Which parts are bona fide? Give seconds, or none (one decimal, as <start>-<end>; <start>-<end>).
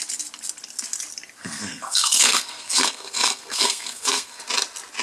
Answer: 0.0-1.4; 4.4-5.0